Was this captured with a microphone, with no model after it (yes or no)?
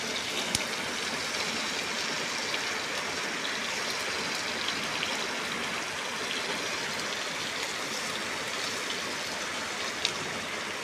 yes